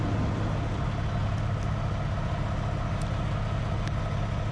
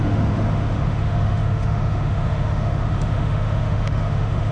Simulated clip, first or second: second